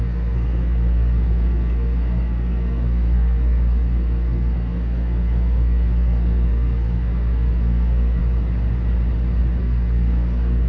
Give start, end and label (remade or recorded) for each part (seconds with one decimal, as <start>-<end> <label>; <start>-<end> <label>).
0.0-8.2 remade; 8.2-9.6 recorded; 9.6-10.7 remade